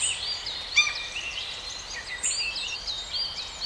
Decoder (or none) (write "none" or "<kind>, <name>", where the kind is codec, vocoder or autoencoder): none